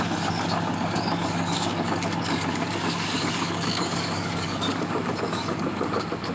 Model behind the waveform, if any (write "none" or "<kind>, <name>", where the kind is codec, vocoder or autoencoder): codec, DAC